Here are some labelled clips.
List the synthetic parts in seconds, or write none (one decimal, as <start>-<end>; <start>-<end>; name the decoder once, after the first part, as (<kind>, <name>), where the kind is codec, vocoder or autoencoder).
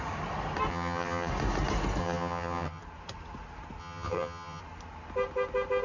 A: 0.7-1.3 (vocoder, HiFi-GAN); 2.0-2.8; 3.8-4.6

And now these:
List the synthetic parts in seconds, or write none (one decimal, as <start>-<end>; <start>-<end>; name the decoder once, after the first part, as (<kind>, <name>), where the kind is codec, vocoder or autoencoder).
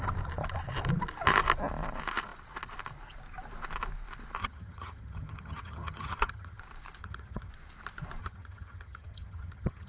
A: 4.4-6.6 (vocoder, HiFi-GAN); 7.0-7.5; 8.2-9.9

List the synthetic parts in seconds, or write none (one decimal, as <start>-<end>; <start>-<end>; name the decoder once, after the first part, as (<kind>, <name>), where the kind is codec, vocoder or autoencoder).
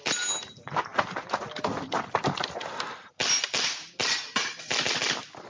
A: none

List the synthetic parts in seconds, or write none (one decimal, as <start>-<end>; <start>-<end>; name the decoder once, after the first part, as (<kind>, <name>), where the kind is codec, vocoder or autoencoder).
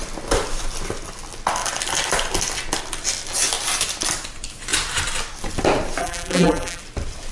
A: 6.0-6.8 (vocoder, BigVGAN v2)